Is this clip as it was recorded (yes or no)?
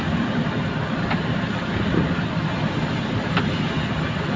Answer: yes